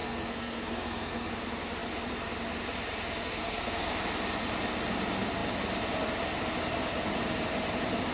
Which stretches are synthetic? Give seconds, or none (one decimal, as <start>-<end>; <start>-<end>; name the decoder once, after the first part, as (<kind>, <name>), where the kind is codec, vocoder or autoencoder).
0.0-1.3 (codec, SNAC); 3.3-3.9